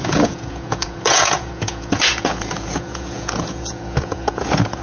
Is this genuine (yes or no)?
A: no